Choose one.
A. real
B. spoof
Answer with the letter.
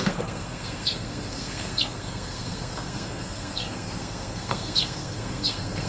B